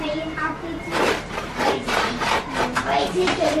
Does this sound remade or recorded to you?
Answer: remade